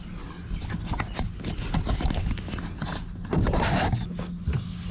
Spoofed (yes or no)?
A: no